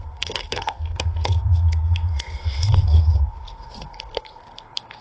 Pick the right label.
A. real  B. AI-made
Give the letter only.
B